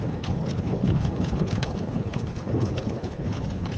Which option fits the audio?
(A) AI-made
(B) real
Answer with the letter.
A